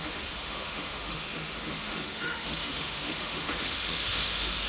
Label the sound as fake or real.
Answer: fake